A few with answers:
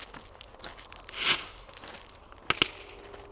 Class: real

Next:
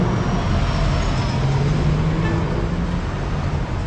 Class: real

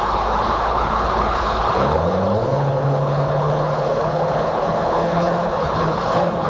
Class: fake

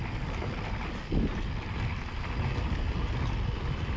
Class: real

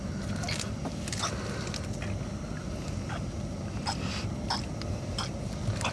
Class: real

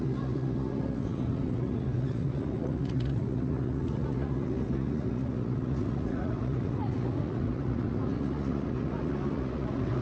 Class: fake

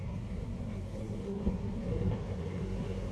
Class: fake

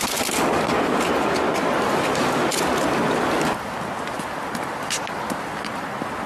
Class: real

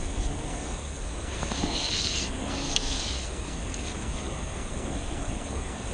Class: fake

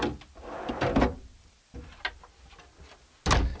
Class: real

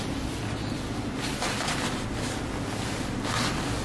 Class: real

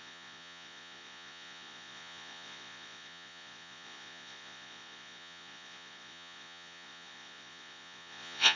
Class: fake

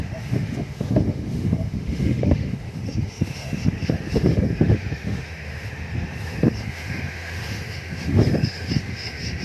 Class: fake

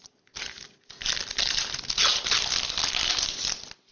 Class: real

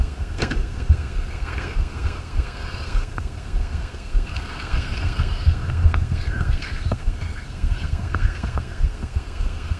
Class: fake